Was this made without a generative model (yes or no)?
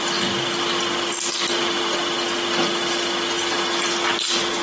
yes